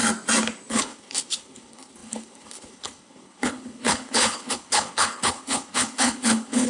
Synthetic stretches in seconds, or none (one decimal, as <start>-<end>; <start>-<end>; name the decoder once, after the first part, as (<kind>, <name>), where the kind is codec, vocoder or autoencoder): 0.7-6.7 (codec, HILCodec)